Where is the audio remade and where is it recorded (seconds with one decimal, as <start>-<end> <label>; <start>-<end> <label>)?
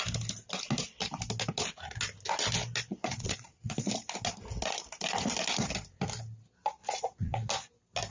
0.0-2.9 recorded; 2.9-3.9 remade; 3.9-6.8 recorded; 6.8-7.5 remade; 7.5-8.1 recorded